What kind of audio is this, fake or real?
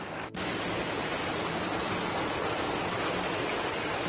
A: real